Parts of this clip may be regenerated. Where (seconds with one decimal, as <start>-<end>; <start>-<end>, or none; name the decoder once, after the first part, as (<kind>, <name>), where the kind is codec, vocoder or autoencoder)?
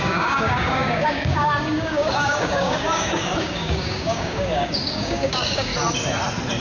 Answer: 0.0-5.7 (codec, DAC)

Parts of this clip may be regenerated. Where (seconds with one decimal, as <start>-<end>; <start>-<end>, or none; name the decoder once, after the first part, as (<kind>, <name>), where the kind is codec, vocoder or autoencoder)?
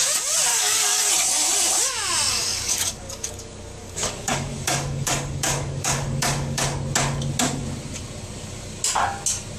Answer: 0.5-1.1 (codec, DAC); 2.3-6.6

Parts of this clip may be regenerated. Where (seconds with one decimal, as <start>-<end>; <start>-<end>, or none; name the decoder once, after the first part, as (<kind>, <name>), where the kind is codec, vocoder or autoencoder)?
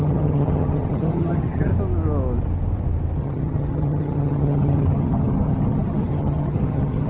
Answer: 0.0-1.7 (vocoder, HiFi-GAN); 3.2-7.1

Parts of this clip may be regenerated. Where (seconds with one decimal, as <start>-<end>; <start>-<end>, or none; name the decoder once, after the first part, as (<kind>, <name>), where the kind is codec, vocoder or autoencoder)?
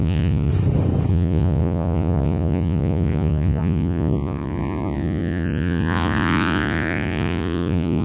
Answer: 0.0-0.5 (vocoder, Vocos); 1.1-8.0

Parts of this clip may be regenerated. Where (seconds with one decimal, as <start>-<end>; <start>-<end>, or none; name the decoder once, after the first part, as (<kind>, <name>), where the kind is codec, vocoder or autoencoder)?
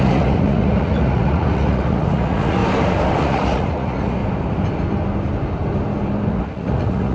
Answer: 0.0-2.6 (vocoder, Vocos); 3.2-4.2; 6.3-7.1